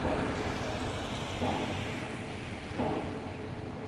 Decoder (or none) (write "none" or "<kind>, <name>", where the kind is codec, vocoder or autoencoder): vocoder, BigVGAN v2